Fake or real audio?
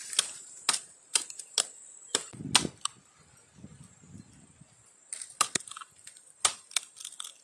real